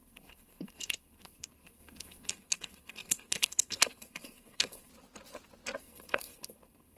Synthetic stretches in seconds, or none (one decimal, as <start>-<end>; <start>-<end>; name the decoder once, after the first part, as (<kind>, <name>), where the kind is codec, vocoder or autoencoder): 0.0-4.9 (codec, SNAC); 5.8-7.0